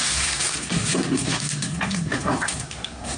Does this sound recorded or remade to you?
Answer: remade